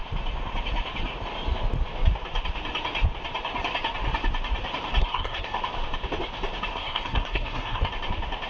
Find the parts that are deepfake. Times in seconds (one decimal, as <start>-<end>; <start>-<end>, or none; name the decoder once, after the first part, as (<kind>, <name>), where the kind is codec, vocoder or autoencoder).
5.0-5.6 (codec, SNAC); 6.7-7.9